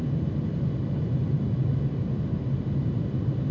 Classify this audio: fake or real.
real